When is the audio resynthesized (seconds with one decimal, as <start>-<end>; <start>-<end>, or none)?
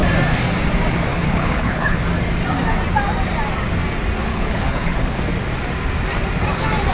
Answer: 1.1-2.0; 4.3-5.2